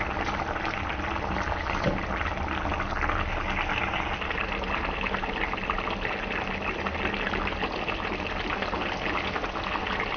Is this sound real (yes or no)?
yes